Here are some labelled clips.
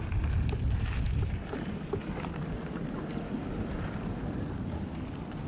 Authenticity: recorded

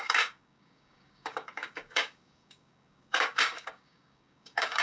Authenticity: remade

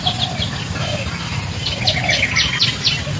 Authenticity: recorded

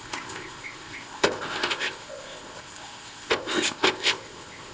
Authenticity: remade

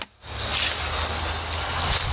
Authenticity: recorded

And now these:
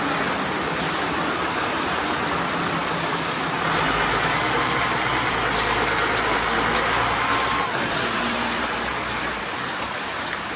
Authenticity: recorded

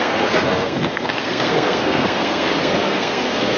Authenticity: remade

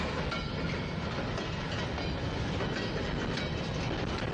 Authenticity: recorded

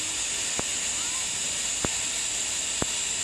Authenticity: recorded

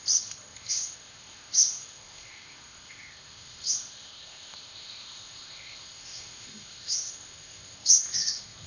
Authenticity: remade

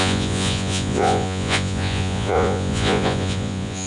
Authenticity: remade